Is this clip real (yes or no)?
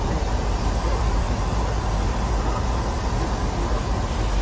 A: yes